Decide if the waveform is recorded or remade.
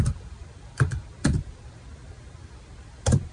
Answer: remade